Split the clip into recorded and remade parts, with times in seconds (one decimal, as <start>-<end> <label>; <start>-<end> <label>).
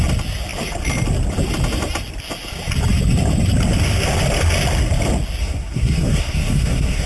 0.0-5.4 recorded; 5.4-7.1 remade